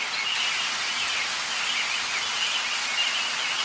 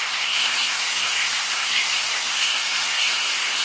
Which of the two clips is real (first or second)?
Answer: first